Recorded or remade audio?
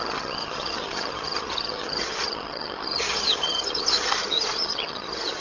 remade